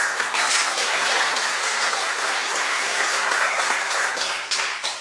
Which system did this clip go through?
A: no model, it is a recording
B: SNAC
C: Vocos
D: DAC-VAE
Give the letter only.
B